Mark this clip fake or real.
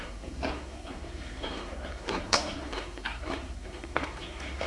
fake